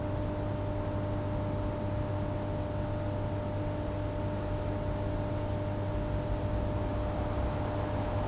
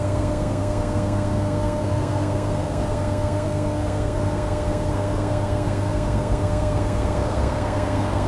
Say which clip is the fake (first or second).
second